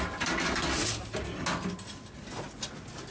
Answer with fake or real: real